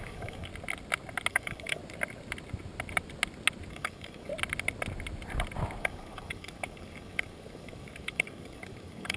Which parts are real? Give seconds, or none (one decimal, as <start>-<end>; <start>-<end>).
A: 0.5-1.3; 1.8-3.7; 4.3-5.8